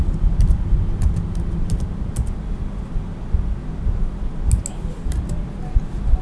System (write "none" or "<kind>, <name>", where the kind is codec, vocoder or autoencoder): none